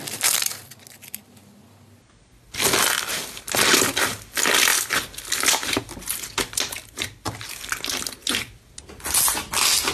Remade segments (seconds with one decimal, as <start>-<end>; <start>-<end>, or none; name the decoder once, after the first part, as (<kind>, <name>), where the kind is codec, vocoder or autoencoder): none